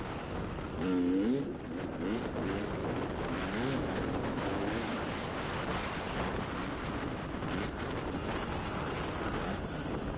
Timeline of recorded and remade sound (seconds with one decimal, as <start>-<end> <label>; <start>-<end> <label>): 0.0-2.8 recorded; 2.8-6.1 remade; 6.1-10.2 recorded